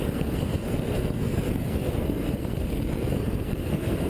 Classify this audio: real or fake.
fake